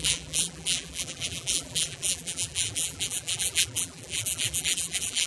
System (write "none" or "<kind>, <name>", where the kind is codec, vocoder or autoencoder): vocoder, BigVGAN v2